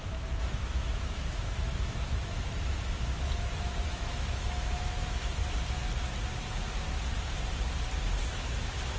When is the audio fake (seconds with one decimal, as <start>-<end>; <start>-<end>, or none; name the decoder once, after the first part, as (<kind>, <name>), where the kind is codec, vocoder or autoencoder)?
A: 0.0-5.4 (autoencoder, DAC-VAE); 8.2-9.0